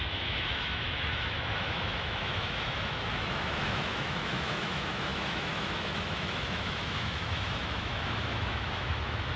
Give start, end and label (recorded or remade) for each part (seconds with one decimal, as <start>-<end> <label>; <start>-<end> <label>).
0.0-9.4 remade